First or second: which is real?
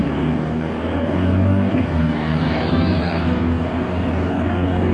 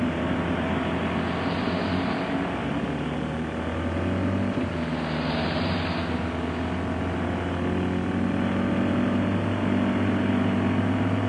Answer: second